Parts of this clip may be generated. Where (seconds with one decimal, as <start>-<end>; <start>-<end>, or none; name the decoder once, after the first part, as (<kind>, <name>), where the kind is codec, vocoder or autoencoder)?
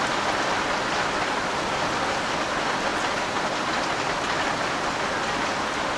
none